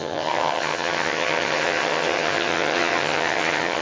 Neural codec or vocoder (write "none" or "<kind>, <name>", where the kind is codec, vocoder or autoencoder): vocoder, HiFi-GAN